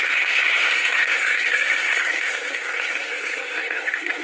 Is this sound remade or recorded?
remade